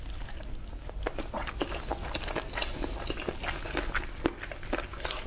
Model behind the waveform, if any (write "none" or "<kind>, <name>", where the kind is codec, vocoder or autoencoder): none